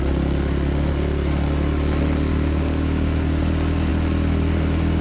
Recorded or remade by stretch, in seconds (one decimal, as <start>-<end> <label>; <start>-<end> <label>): 0.0-2.3 recorded; 2.3-3.4 remade; 3.4-5.0 recorded